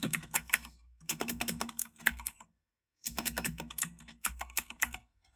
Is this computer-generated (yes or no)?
yes